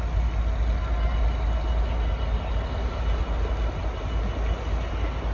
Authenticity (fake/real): real